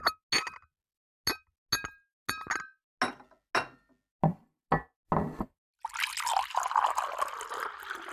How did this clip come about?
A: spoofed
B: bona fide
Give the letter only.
B